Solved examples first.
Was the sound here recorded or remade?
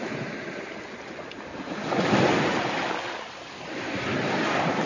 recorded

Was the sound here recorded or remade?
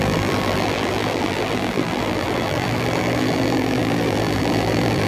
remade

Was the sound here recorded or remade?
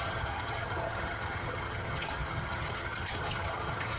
remade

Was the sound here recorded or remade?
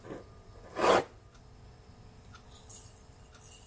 recorded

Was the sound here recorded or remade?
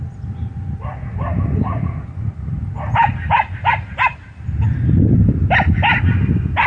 recorded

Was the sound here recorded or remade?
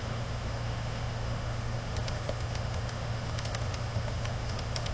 remade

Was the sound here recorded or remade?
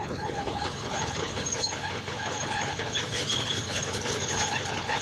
remade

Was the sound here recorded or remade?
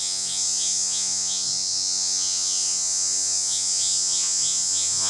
remade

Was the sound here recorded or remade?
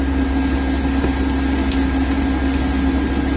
recorded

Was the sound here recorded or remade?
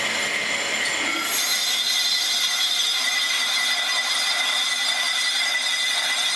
recorded